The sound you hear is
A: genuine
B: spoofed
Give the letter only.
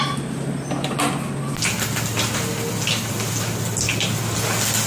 A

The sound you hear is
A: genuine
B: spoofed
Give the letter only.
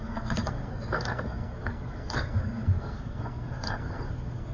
B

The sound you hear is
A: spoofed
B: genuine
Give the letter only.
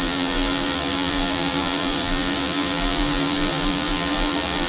A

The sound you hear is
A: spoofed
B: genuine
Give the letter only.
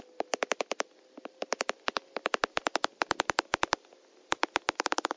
B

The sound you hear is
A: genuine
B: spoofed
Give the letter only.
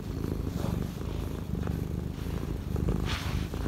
B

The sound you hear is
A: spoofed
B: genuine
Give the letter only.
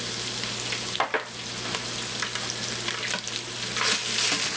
B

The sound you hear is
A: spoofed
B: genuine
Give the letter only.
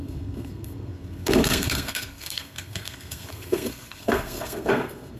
A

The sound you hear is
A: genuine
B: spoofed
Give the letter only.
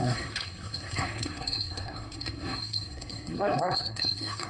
B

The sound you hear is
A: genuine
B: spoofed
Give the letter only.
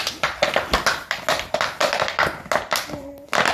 A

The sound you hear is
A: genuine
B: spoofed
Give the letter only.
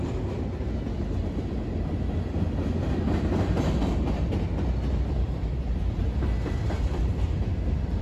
A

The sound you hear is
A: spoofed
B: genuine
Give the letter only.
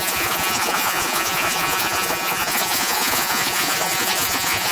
A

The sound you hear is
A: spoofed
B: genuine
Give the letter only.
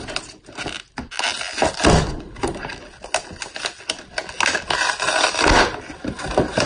B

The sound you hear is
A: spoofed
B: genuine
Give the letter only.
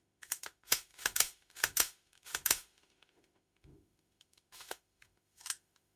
A